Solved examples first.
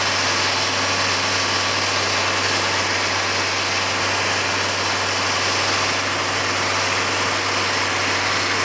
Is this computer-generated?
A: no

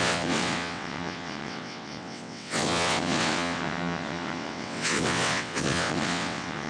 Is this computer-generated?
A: yes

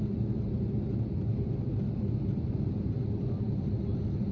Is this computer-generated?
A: no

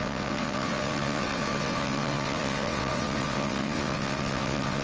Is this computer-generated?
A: yes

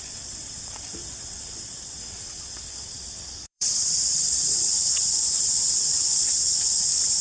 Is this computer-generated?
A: yes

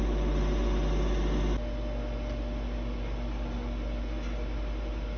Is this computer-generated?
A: no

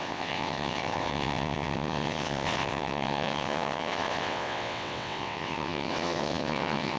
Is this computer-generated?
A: yes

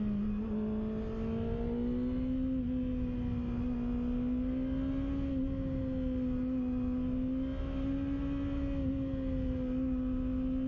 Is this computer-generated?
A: no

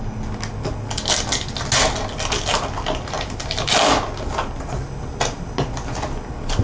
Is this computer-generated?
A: no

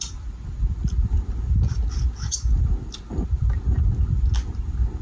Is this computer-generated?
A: no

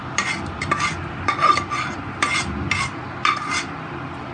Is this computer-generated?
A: no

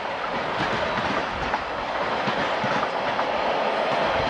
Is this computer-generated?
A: no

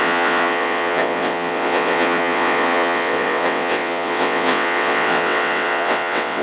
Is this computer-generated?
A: yes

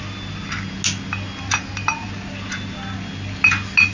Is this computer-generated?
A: no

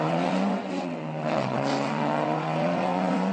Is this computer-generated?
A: yes